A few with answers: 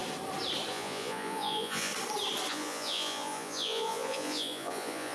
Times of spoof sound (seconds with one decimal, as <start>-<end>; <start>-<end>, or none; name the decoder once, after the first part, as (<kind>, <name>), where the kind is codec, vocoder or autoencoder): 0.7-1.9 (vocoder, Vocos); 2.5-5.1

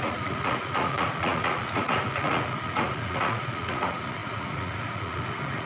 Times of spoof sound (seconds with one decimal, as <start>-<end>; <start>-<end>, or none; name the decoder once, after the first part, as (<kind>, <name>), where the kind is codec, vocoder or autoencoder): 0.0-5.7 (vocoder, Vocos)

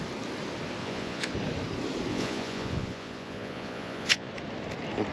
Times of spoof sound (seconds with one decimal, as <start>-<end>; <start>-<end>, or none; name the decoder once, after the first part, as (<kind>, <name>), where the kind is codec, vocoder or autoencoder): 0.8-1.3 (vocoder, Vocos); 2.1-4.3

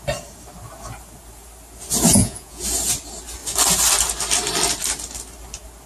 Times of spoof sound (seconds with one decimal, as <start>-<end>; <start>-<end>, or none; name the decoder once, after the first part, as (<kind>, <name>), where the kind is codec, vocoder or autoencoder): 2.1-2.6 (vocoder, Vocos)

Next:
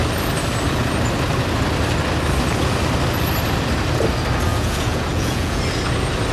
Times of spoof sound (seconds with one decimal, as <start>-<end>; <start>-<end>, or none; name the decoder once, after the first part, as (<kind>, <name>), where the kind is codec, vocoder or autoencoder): 4.5-5.6 (vocoder, Vocos)